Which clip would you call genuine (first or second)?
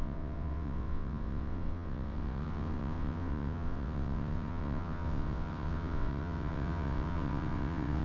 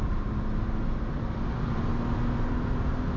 second